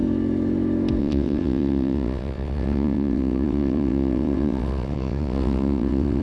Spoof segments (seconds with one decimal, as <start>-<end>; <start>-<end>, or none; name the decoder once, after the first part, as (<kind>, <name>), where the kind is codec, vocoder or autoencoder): 1.0-6.2 (vocoder, WaveNeXt)